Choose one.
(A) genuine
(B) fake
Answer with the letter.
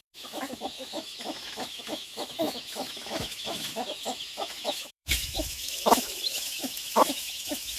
B